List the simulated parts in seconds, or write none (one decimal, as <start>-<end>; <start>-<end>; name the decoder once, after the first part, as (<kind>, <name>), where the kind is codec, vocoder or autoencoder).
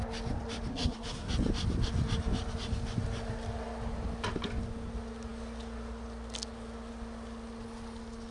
0.7-1.3 (codec, SNAC)